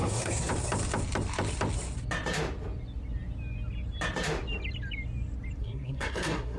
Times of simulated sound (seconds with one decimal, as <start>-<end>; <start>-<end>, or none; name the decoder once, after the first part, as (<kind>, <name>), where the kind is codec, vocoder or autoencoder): 0.0-0.5 (codec, SNAC); 5.6-6.6